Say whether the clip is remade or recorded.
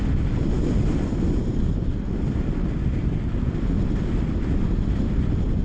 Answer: recorded